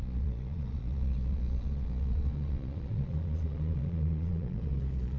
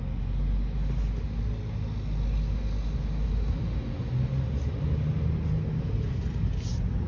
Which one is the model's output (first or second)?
first